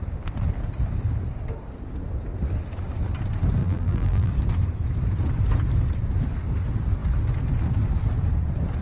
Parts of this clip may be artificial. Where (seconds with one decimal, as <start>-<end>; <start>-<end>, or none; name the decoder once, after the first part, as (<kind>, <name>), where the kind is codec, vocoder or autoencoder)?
3.6-4.3 (vocoder, BigVGAN v2)